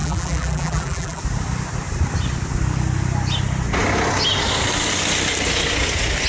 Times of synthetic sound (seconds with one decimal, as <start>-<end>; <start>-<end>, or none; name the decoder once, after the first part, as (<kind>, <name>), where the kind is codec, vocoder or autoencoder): 0.0-1.2 (vocoder, BigVGAN v2)